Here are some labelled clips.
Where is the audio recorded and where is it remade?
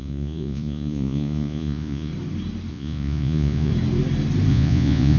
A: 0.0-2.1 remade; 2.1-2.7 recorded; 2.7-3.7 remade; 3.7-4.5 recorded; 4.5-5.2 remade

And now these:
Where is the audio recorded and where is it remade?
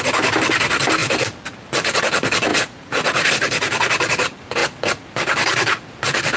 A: 0.0-2.5 recorded; 2.5-3.3 remade; 3.3-6.4 recorded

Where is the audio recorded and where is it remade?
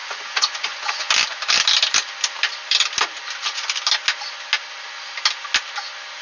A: 0.0-1.1 remade; 1.1-6.2 recorded